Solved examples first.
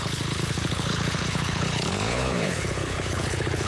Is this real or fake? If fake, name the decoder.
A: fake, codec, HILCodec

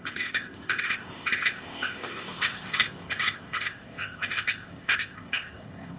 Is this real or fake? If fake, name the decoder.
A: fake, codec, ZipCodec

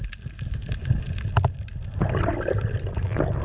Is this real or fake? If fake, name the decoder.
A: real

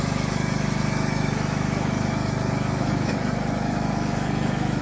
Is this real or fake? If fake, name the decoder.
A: fake, autoencoder, DAC-VAE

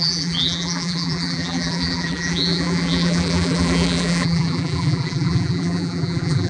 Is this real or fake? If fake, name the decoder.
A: fake, vocoder, BigVGAN v2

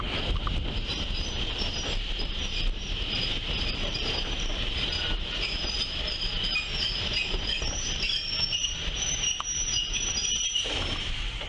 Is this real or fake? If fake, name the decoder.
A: fake, vocoder, BigVGAN v2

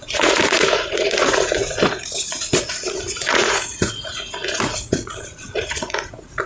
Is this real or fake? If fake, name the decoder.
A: fake, vocoder, Vocos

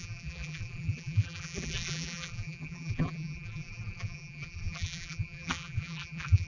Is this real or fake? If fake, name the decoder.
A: fake, vocoder, BigVGAN v2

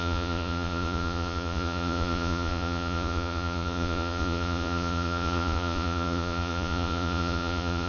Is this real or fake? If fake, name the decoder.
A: fake, vocoder, Vocos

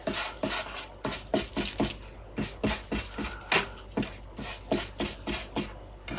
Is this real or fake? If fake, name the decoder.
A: real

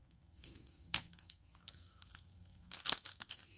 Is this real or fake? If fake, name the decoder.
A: fake, codec, SNAC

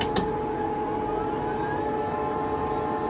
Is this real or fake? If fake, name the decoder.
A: real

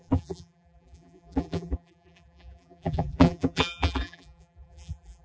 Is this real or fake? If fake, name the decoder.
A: fake, vocoder, BigVGAN v2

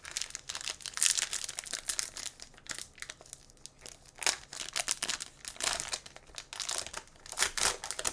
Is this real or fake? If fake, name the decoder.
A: real